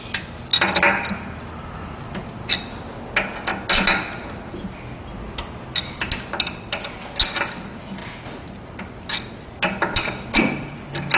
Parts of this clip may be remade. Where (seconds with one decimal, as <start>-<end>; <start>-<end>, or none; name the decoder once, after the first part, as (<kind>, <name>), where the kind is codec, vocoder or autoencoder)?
none

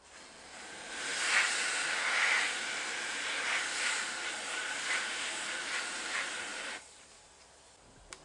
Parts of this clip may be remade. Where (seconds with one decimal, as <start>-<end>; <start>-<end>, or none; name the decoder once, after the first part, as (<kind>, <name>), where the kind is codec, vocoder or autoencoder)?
none

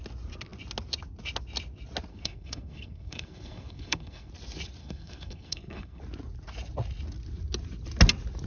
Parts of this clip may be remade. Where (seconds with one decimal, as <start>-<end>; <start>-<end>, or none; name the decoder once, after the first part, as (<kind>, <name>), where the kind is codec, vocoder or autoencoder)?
2.1-4.3 (codec, SNAC); 4.8-6.0

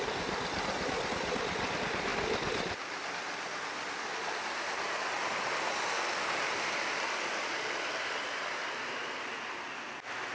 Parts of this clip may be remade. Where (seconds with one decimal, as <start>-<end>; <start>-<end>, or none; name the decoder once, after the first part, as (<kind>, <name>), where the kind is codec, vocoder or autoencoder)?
2.1-5.4 (vocoder, BigVGAN v2)

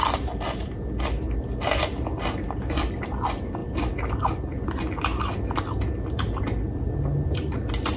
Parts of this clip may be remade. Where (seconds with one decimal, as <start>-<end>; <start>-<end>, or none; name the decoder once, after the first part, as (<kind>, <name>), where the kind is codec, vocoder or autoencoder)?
none

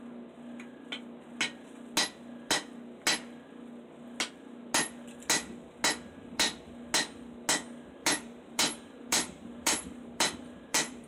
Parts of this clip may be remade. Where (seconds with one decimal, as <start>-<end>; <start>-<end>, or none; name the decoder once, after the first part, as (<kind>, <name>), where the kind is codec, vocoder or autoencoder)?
8.0-11.1 (vocoder, BigVGAN v2)

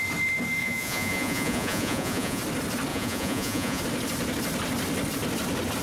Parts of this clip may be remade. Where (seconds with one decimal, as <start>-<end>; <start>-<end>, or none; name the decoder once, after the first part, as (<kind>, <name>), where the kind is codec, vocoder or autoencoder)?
0.6-2.4 (vocoder, Vocos); 2.9-3.8